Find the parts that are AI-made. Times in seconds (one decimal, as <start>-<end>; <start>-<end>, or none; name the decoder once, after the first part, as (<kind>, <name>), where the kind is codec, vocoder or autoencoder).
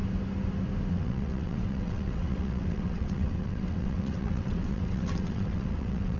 0.9-6.2 (vocoder, WaveNeXt)